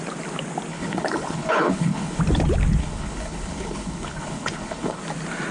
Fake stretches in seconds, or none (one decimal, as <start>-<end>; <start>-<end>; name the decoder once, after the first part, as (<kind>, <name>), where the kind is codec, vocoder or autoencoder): 0.7-2.2 (codec, HILCodec); 2.8-5.0